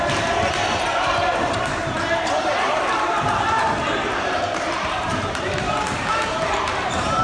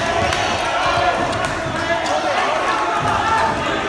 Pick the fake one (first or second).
first